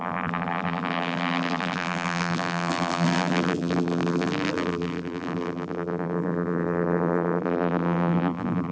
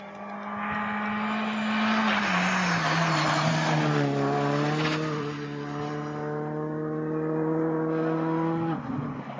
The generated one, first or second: first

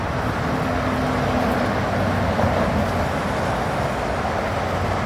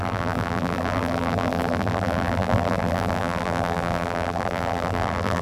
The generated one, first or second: second